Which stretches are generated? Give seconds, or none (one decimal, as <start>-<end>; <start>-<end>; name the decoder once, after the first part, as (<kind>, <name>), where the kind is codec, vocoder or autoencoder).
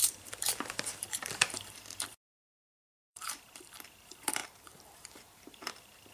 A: 0.0-6.1 (vocoder, BigVGAN v2)